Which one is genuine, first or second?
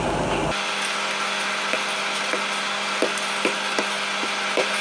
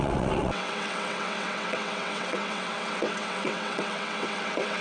first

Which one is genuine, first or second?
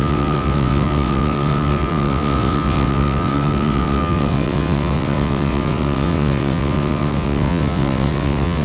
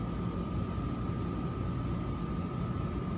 second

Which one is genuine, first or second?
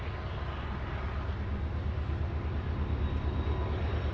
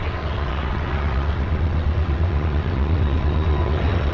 first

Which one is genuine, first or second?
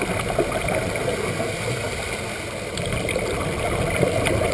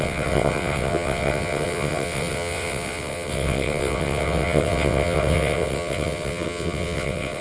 first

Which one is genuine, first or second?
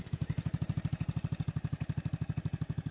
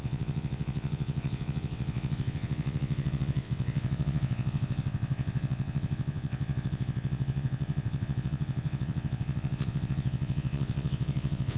first